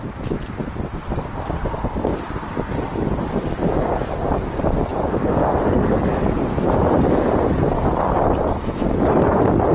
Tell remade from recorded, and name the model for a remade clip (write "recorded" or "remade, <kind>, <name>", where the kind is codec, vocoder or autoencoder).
recorded